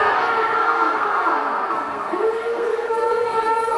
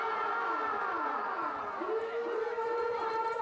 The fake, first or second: first